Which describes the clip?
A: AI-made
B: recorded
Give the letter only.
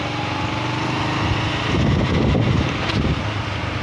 B